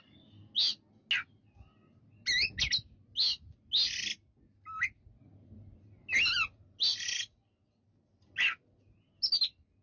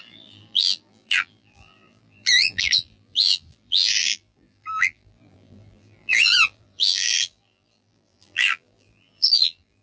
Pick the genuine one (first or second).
first